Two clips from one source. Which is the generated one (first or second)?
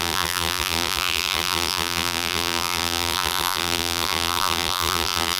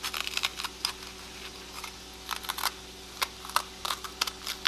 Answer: first